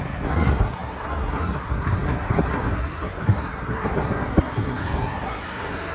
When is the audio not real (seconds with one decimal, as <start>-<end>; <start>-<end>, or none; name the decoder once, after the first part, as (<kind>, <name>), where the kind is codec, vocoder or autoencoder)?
0.0-5.9 (codec, SNAC)